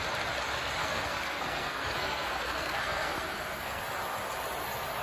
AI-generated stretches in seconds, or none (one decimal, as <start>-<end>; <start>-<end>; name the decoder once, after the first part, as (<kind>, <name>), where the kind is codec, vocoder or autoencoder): 0.8-3.8 (codec, SNAC)

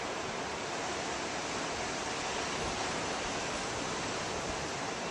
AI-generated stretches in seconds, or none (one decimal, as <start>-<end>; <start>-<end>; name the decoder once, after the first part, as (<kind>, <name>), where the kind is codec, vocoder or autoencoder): none